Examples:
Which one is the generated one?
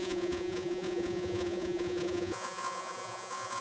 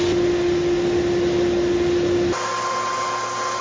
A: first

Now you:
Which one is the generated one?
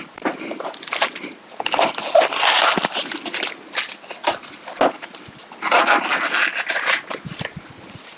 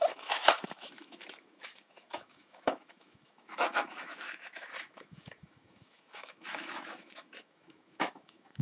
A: second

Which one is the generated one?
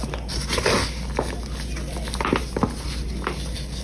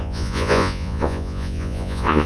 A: second